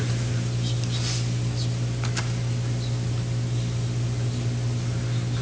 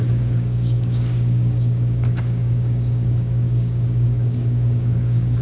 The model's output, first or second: second